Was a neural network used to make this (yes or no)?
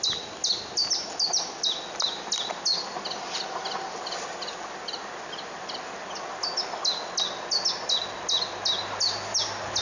no